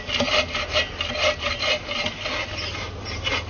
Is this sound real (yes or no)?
yes